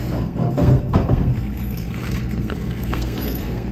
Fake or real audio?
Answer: fake